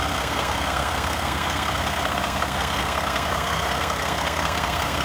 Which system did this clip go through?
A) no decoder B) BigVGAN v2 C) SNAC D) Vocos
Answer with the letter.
C